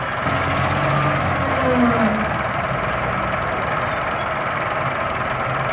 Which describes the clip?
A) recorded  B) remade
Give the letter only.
A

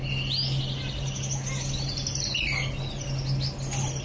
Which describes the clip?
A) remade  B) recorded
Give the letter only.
B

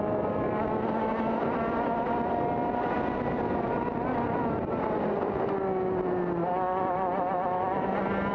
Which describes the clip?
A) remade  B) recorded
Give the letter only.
B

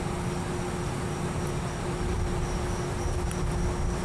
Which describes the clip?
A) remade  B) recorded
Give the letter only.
B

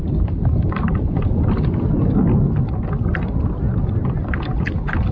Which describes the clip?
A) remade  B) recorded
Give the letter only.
B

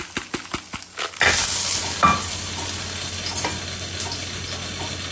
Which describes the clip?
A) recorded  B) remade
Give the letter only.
A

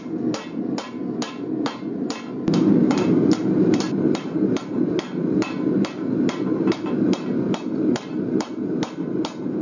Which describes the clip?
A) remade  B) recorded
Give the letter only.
B